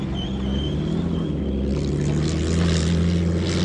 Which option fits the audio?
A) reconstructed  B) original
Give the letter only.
B